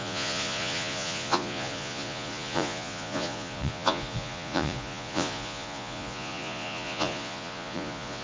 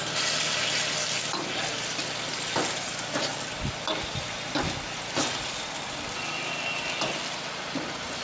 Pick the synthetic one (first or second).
first